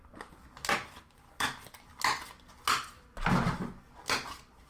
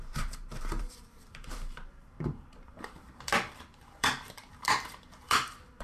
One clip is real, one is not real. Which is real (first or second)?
first